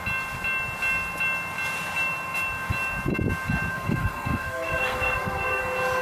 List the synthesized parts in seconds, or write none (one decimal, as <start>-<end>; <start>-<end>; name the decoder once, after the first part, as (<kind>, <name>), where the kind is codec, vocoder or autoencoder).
3.7-5.6 (codec, SNAC)